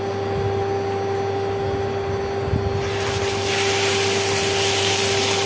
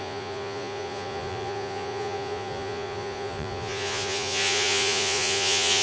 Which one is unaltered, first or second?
first